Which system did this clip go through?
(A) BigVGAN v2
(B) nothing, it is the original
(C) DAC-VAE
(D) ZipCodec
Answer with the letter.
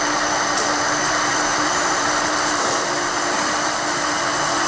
A